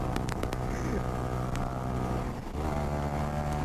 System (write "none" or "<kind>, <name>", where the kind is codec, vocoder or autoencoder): none